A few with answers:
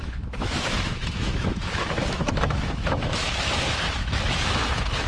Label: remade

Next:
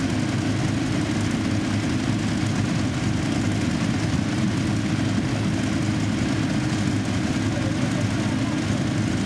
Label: recorded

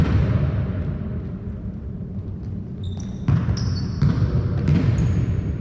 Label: recorded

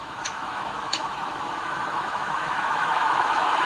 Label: remade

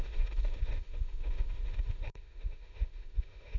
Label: remade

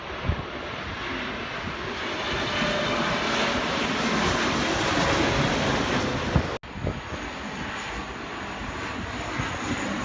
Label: recorded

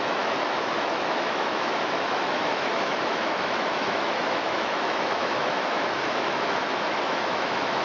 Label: remade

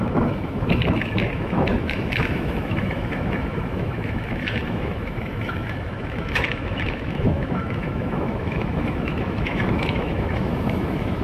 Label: remade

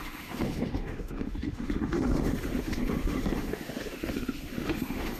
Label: remade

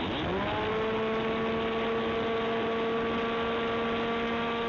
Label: recorded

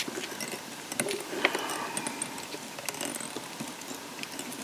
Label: recorded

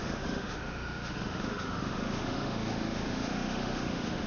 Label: remade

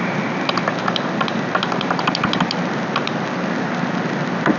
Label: recorded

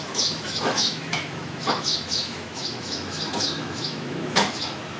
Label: remade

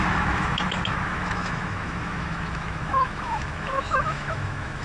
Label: remade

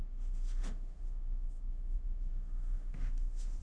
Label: remade